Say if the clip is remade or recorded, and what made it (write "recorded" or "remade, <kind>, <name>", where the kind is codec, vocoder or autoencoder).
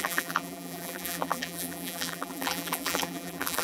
remade, vocoder, BigVGAN v2